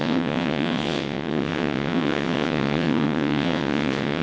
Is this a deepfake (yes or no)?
yes